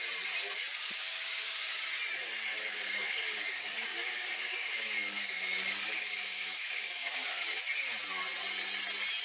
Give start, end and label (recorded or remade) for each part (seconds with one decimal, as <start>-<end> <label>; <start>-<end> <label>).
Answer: 0.0-0.8 recorded; 0.8-1.9 remade; 1.9-2.5 recorded; 2.5-7.6 remade; 7.6-9.2 recorded